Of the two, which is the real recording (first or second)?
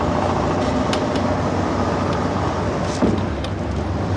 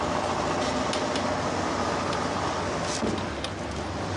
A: second